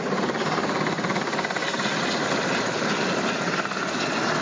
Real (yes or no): yes